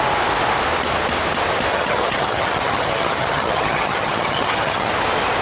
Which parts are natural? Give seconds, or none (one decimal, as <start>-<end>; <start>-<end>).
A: 0.0-1.7; 4.9-5.4